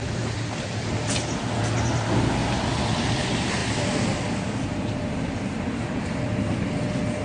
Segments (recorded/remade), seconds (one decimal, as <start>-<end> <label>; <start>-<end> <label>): 0.0-7.2 recorded